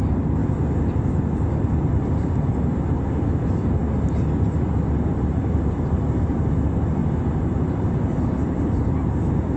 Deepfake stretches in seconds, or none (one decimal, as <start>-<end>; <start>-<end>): 0.0-0.4; 2.5-3.8; 5.1-7.0; 7.5-9.6